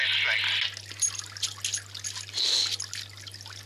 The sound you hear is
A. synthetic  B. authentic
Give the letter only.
B